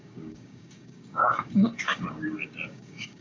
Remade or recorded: remade